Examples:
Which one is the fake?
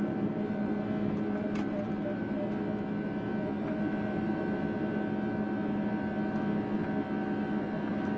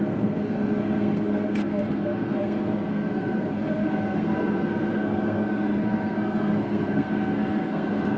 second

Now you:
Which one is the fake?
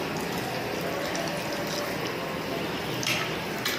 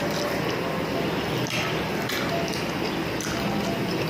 second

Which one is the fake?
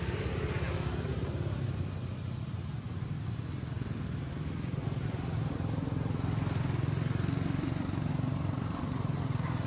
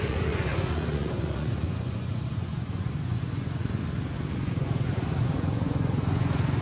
second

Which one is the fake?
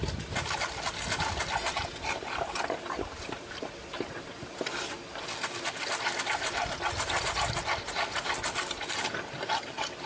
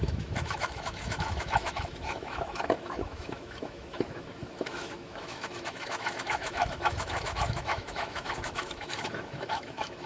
second